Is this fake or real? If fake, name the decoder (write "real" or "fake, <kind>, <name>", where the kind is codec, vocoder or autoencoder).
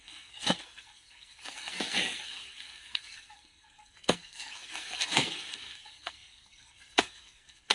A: fake, codec, SNAC